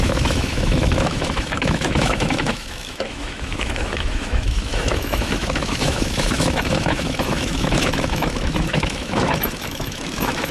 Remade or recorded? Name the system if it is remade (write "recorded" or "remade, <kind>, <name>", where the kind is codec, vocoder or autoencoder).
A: remade, autoencoder, DAC-VAE